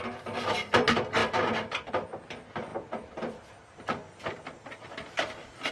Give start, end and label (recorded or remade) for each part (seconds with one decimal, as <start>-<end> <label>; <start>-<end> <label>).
0.0-1.2 recorded; 1.2-1.9 remade; 1.9-4.0 recorded; 4.0-5.7 remade